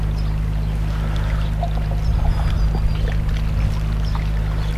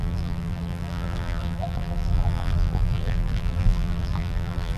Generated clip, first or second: second